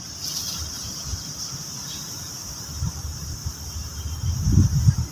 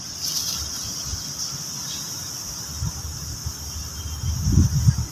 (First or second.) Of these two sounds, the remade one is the first